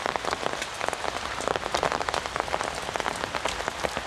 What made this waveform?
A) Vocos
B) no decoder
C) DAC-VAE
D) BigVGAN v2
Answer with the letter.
B